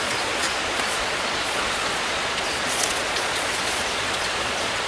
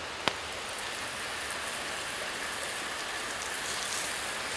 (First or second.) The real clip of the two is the second